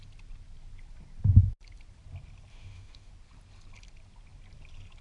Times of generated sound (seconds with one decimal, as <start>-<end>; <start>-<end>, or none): 2.5-3.1